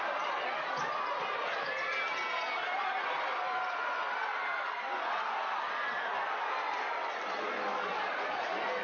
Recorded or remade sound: recorded